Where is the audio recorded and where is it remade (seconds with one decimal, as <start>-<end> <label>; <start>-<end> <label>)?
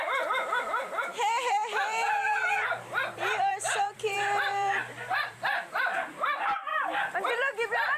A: 0.0-6.7 remade; 6.7-7.3 recorded; 7.3-8.0 remade